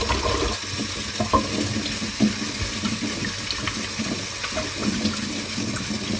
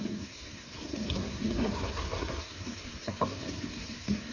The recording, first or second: first